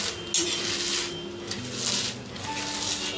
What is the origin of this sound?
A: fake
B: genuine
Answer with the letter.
B